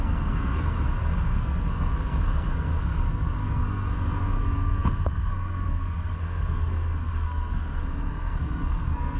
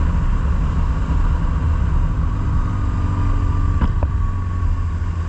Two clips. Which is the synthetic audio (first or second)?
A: first